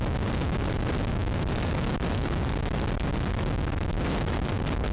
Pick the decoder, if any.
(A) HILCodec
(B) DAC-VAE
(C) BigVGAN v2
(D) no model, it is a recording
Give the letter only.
D